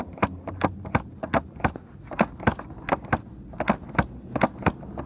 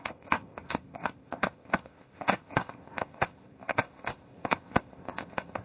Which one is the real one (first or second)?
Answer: first